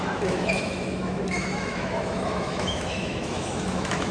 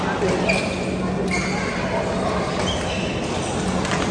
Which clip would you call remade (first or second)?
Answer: first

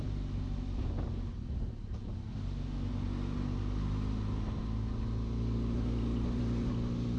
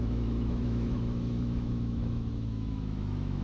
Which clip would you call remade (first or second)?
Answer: second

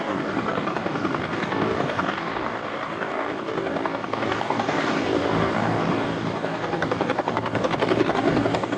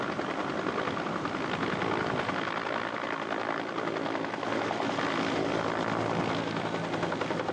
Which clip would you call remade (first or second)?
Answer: first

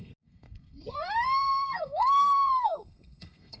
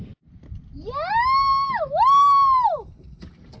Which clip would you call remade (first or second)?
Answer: first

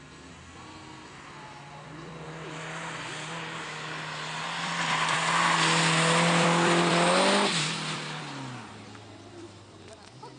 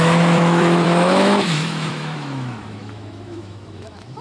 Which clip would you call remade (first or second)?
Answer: second